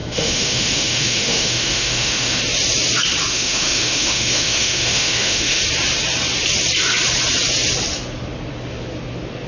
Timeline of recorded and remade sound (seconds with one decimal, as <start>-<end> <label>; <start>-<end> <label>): 0.0-2.4 remade; 2.4-3.3 recorded; 3.3-5.6 remade; 5.6-9.5 recorded